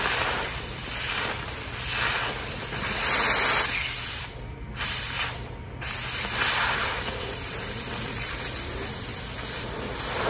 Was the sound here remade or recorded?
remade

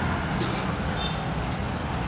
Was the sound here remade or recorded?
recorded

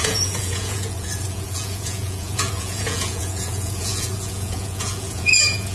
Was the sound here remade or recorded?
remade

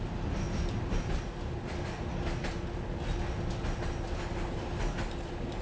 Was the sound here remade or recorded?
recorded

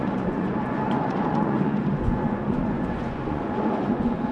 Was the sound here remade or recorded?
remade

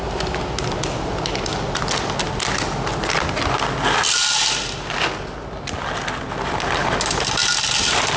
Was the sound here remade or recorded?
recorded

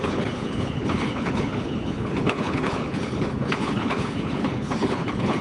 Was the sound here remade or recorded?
remade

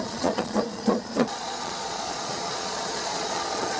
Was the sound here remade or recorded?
remade